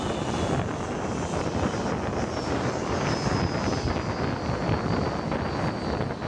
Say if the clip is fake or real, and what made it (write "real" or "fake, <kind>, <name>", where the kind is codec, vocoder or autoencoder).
real